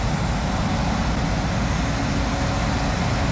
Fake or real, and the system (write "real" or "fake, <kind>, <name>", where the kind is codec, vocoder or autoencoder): real